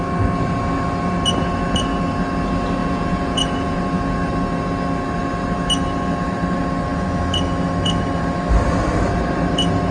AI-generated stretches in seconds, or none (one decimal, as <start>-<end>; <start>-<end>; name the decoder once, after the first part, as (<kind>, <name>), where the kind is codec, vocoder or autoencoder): 2.8-3.8 (vocoder, Vocos)